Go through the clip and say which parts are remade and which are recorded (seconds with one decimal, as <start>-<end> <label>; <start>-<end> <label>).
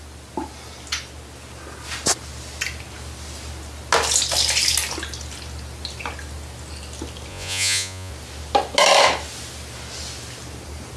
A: 0.0-7.3 recorded; 7.3-8.1 remade; 8.1-11.0 recorded